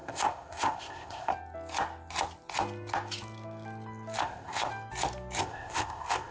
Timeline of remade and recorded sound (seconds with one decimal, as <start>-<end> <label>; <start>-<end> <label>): 0.0-1.3 remade; 1.3-4.2 recorded; 4.2-4.7 remade; 4.7-5.4 recorded; 5.4-6.3 remade